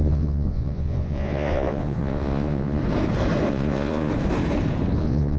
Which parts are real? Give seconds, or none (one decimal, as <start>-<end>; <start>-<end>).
2.8-3.5; 4.1-5.0

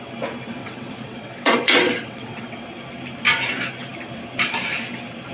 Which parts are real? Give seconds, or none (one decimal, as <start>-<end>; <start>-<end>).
0.0-0.6; 2.6-5.3

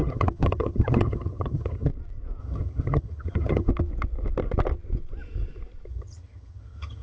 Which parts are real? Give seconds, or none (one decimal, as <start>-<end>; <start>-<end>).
1.9-2.4; 3.7-5.9

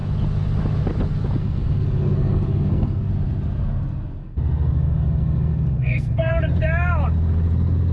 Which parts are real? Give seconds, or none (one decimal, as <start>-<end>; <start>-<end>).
0.0-1.4; 3.1-4.2; 6.3-7.9

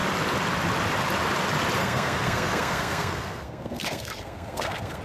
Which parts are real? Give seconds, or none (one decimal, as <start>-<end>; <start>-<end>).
0.0-1.8

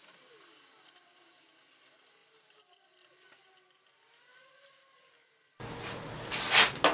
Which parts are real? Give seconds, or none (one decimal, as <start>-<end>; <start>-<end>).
0.0-6.9

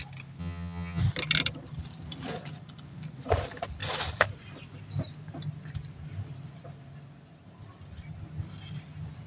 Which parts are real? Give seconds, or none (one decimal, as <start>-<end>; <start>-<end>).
0.0-0.4; 1.0-9.3

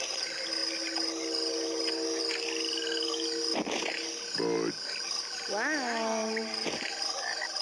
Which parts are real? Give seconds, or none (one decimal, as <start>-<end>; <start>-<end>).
0.0-7.6